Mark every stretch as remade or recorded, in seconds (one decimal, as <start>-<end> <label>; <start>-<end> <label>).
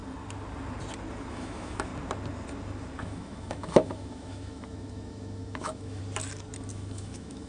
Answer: 0.0-1.3 recorded; 1.3-1.9 remade; 1.9-3.0 recorded; 3.0-6.0 remade; 6.0-6.7 recorded; 6.7-7.5 remade